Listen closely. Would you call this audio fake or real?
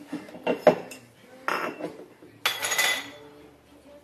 real